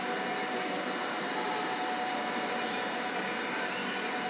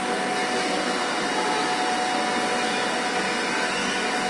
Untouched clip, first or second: second